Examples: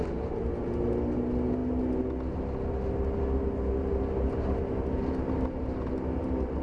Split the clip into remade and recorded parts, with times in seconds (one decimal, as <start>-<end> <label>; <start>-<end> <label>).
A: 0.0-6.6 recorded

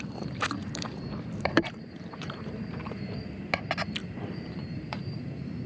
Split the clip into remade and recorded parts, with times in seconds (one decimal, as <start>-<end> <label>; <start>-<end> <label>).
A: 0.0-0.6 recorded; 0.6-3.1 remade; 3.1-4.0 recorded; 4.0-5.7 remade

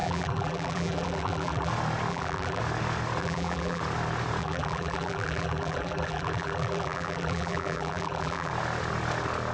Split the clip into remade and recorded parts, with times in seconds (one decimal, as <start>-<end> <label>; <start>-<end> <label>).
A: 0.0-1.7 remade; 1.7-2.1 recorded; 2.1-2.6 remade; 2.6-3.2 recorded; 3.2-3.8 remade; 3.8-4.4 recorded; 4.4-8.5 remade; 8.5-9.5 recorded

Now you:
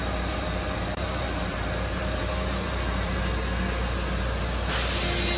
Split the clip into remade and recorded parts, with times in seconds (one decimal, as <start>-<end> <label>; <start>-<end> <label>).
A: 0.0-3.2 remade; 3.2-5.4 recorded

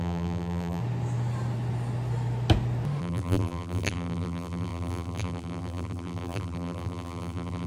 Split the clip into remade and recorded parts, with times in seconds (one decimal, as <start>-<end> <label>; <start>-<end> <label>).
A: 0.0-0.8 remade; 0.8-3.0 recorded; 3.0-7.7 remade

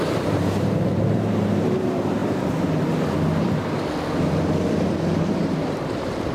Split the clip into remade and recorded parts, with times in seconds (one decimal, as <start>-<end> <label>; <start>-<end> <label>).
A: 0.0-2.2 remade; 2.2-5.3 recorded; 5.3-6.3 remade